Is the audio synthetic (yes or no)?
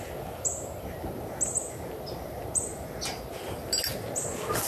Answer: no